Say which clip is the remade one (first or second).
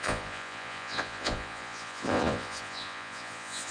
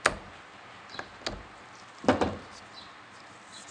first